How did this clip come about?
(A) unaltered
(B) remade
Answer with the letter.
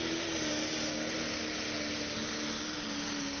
A